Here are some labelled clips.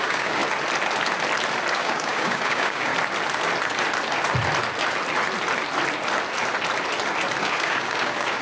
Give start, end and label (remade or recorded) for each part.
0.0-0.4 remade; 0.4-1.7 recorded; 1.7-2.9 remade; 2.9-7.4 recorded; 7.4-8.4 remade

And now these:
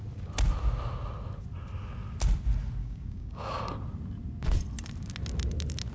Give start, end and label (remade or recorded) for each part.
0.0-2.8 recorded; 2.8-3.6 remade; 3.6-5.9 recorded